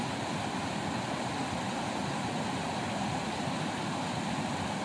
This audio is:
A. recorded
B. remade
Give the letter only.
A